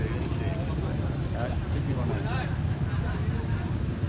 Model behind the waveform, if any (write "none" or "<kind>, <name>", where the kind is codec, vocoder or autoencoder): none